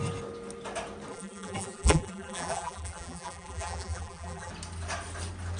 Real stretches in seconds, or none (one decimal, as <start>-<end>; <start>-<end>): 0.0-1.1; 4.5-5.6